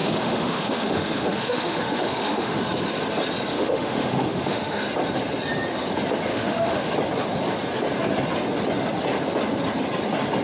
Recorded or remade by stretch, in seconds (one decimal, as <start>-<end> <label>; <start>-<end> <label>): 0.0-2.6 remade; 2.6-3.5 recorded; 3.5-4.8 remade; 4.8-6.3 recorded; 6.3-6.9 remade; 6.9-10.4 recorded